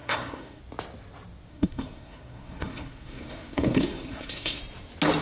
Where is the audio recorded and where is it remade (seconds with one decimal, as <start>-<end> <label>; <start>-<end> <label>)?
0.0-0.6 remade; 0.6-1.5 recorded; 1.5-4.6 remade; 4.6-5.2 recorded